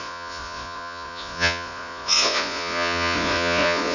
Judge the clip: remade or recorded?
remade